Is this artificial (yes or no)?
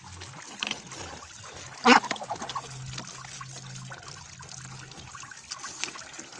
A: no